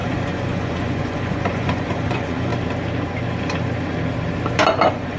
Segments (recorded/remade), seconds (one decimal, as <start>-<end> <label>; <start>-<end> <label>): 0.0-2.5 remade; 2.5-4.7 recorded; 4.7-5.2 remade